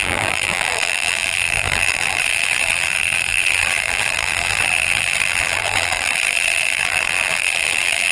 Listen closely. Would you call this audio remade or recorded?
remade